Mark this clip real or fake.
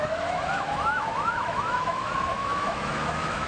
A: fake